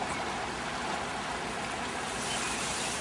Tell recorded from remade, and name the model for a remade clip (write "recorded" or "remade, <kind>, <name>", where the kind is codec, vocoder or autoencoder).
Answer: recorded